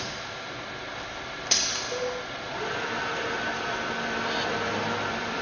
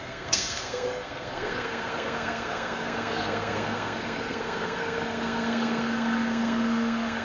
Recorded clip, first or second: first